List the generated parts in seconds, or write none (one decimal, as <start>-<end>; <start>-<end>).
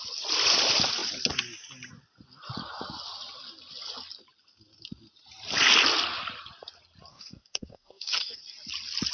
7.1-8.4